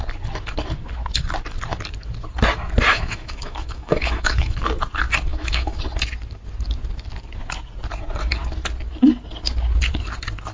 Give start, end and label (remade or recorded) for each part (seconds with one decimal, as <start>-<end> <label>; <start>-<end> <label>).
0.0-2.9 recorded; 2.9-4.6 remade; 4.6-5.3 recorded; 5.3-5.8 remade; 5.8-10.5 recorded